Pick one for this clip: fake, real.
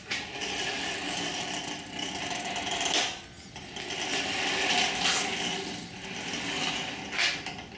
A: real